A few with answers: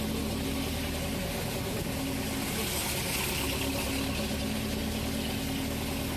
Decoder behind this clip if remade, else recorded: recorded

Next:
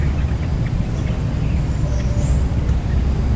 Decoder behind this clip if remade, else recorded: recorded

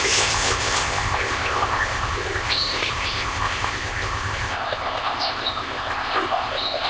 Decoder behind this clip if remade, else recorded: remade, codec, ZipCodec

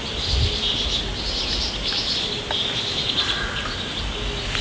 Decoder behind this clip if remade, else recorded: recorded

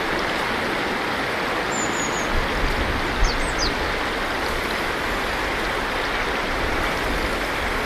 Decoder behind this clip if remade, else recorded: recorded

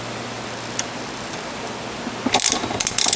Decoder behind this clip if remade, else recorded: recorded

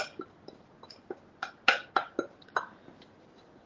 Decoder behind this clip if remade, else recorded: recorded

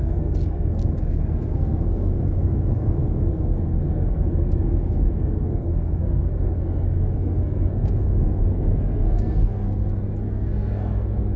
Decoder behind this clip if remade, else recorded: remade, codec, SNAC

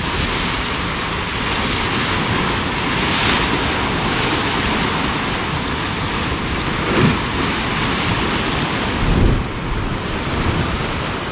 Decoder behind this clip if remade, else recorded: recorded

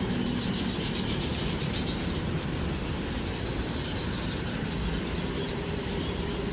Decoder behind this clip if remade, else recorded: recorded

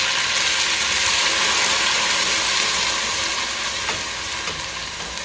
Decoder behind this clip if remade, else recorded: recorded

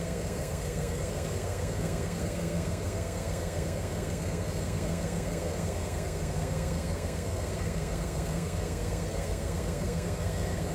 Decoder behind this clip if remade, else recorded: remade, codec, SNAC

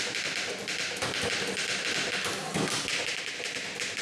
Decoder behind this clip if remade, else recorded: recorded